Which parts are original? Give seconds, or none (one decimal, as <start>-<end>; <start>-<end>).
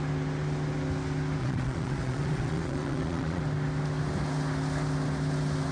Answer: 0.0-1.4; 3.4-5.7